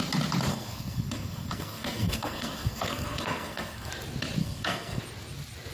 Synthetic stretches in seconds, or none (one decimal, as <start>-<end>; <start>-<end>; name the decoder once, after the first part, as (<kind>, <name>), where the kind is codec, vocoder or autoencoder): 0.5-3.9 (codec, SNAC); 4.4-5.0